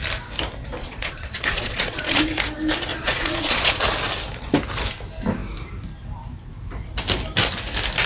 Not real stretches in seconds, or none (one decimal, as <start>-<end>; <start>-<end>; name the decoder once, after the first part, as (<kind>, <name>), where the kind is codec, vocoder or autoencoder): 0.8-2.2 (vocoder, Vocos); 2.9-3.8